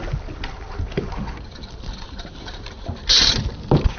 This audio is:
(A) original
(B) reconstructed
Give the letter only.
A